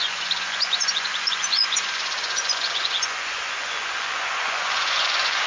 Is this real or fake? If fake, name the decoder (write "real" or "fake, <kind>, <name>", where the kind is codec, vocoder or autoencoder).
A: fake, vocoder, Vocos